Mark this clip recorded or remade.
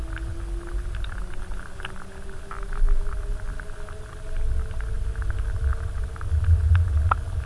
recorded